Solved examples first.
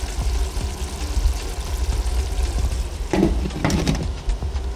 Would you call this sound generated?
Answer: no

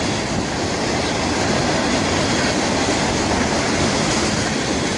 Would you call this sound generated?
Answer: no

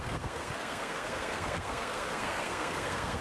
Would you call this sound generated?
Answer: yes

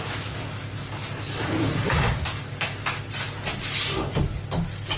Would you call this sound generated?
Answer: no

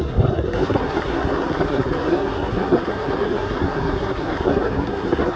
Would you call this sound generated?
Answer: yes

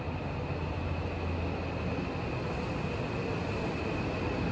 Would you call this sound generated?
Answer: no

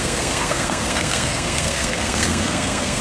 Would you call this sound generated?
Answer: yes